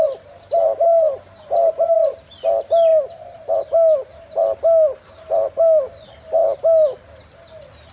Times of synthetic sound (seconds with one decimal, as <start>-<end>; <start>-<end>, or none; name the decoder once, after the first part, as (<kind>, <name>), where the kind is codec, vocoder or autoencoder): none